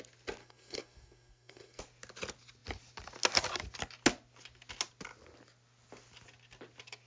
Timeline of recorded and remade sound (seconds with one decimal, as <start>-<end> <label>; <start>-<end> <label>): 0.0-0.4 recorded; 0.4-1.8 remade; 1.8-7.1 recorded